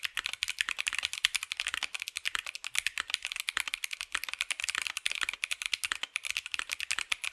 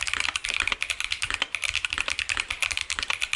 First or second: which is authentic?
first